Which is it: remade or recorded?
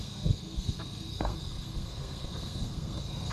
remade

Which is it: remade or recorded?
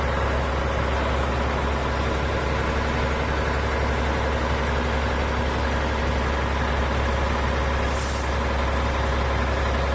recorded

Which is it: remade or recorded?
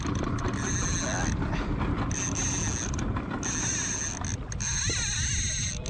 recorded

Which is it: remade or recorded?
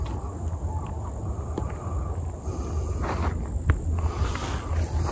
recorded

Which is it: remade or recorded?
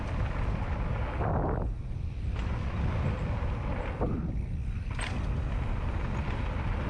recorded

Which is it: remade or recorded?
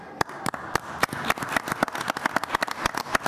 recorded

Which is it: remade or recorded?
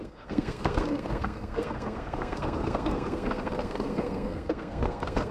remade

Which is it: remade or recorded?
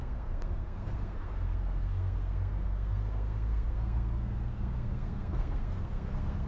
remade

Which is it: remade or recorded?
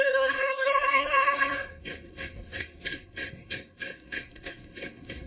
remade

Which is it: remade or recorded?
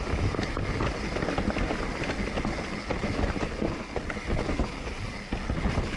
recorded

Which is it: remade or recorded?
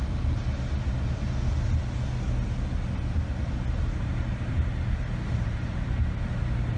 recorded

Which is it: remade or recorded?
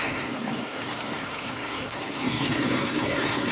remade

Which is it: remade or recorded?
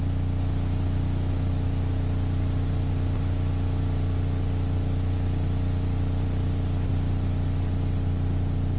recorded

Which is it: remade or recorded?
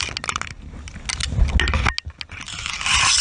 recorded